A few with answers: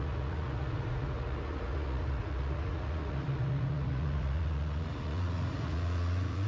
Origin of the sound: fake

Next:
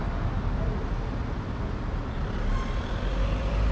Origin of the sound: real